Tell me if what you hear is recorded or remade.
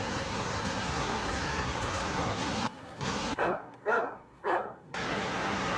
remade